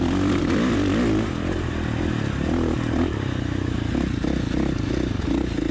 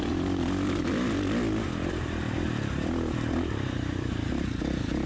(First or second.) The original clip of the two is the first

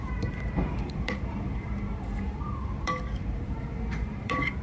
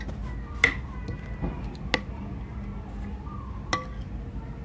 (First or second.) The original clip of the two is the second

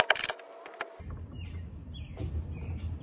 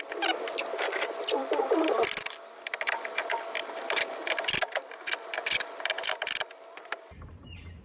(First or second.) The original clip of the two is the first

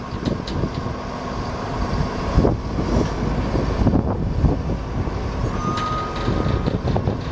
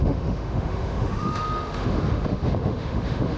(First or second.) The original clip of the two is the first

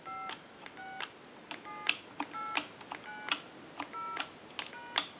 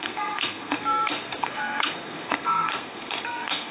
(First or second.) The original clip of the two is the first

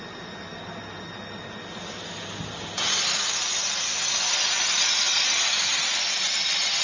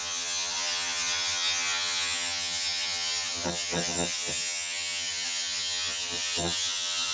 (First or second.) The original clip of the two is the first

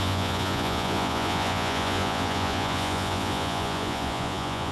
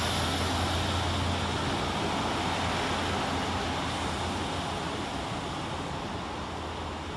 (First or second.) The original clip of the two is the second